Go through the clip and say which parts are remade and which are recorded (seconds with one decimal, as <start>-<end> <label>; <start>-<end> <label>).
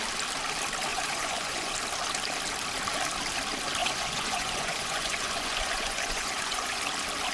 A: 0.0-0.9 recorded; 0.9-1.7 remade; 1.7-3.8 recorded; 3.8-6.8 remade; 6.8-7.3 recorded